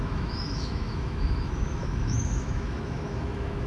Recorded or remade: remade